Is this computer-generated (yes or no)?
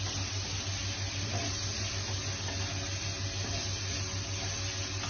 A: no